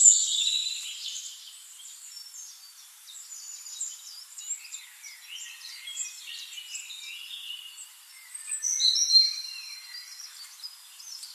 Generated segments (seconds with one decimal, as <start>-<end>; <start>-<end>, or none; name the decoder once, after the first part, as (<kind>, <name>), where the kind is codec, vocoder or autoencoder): 0.0-11.3 (vocoder, BigVGAN v2)